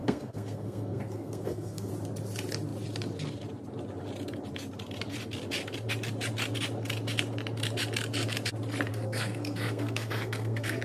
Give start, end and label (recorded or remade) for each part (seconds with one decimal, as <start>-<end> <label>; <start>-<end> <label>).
0.0-1.9 remade; 1.9-8.9 recorded; 8.9-10.8 remade